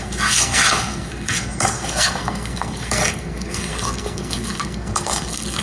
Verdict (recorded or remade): remade